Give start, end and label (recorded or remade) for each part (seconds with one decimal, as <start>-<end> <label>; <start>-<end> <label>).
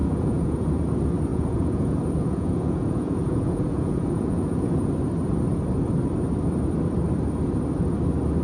0.0-0.7 remade; 0.7-1.3 recorded; 1.3-4.9 remade; 4.9-8.4 recorded